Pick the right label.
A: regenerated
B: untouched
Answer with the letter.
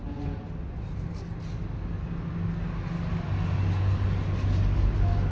B